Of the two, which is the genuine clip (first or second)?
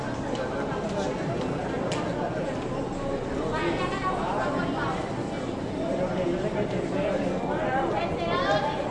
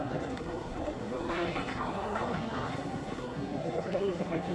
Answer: first